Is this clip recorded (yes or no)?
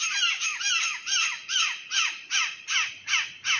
yes